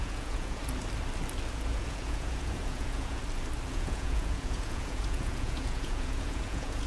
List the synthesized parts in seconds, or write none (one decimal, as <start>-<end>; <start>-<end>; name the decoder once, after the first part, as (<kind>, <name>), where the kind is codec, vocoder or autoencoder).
0.0-0.6 (vocoder, Vocos); 1.5-3.2; 3.7-6.9